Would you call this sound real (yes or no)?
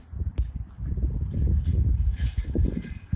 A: yes